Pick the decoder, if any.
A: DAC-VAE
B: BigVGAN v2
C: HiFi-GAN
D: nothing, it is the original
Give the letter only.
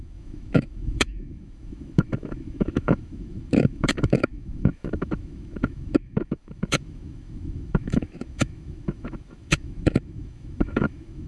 A